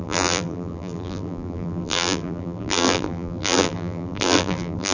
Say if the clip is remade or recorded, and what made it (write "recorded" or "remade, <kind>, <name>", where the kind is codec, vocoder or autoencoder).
remade, vocoder, BigVGAN v2